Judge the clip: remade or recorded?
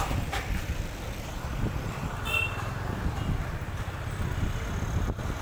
recorded